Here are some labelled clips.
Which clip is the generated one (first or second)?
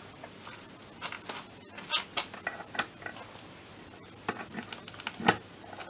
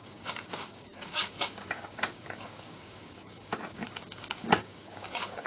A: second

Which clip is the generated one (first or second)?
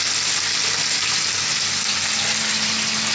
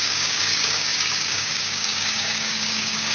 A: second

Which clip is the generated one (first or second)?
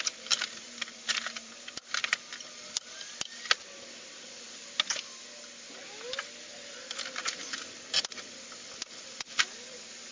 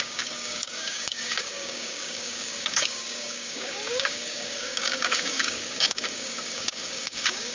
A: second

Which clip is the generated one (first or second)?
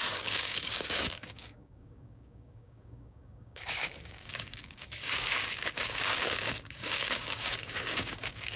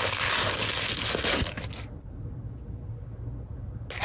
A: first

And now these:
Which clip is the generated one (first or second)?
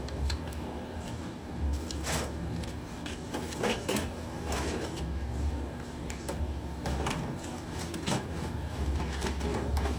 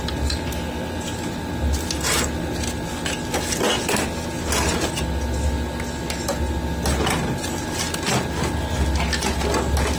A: first